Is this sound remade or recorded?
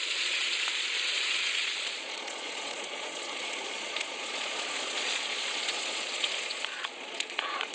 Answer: remade